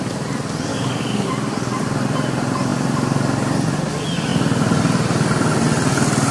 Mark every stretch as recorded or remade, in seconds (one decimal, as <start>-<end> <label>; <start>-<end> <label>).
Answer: 0.0-0.7 recorded; 0.7-1.3 remade; 1.3-6.3 recorded